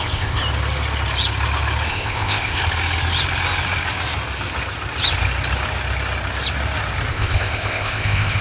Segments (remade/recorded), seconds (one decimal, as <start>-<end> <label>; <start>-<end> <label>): 0.0-0.4 remade; 0.4-1.9 recorded; 1.9-2.6 remade; 2.6-7.1 recorded; 7.1-8.4 remade